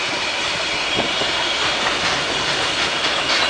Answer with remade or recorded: recorded